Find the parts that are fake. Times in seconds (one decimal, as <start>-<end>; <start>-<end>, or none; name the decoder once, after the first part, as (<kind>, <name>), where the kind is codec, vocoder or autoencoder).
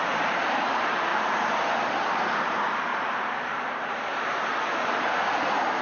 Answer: 0.0-5.8 (vocoder, BigVGAN v2)